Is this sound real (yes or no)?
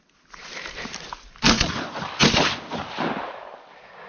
yes